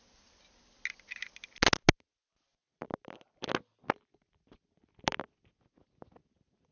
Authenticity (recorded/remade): recorded